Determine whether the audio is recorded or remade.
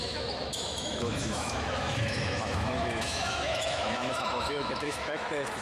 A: remade